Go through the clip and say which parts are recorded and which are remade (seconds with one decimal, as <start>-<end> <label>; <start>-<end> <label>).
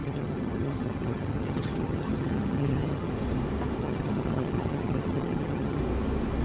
0.0-3.1 remade; 3.1-3.8 recorded; 3.8-5.8 remade; 5.8-6.4 recorded